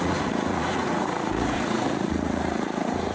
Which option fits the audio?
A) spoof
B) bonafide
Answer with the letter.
A